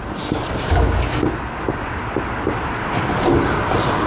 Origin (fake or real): real